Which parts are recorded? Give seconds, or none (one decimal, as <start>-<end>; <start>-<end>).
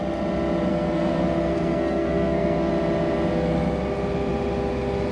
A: 0.0-0.7; 2.7-5.1